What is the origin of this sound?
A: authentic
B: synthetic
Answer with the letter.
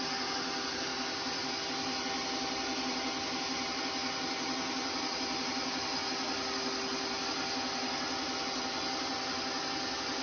A